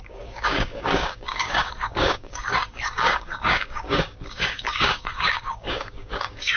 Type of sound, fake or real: fake